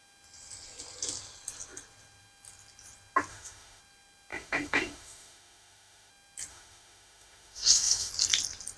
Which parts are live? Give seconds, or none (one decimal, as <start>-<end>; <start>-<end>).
0.0-3.3; 3.8-4.3; 6.1-6.5; 8.1-8.8